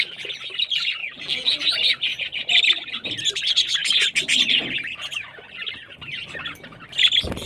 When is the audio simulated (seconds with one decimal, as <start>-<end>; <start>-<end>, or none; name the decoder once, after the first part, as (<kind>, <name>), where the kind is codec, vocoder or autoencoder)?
1.0-1.6 (vocoder, BigVGAN v2)

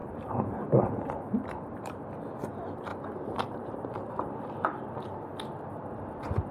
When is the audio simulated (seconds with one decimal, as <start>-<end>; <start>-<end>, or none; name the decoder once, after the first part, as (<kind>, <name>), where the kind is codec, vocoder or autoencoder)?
0.0-2.0 (vocoder, BigVGAN v2); 2.9-4.8

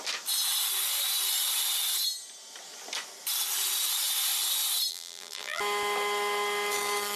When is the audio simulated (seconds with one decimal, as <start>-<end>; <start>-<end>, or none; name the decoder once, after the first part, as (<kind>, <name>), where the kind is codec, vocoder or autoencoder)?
4.9-5.6 (vocoder, BigVGAN v2)